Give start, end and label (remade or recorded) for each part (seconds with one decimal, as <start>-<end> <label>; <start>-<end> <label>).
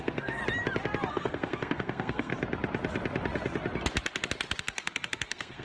0.0-0.4 remade; 0.4-1.1 recorded; 1.1-2.3 remade; 2.3-4.6 recorded; 4.6-5.6 remade